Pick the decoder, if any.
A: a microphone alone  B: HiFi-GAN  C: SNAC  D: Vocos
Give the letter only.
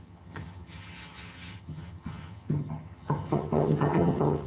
B